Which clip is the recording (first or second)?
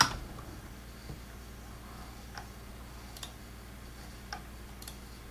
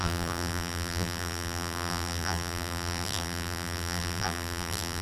first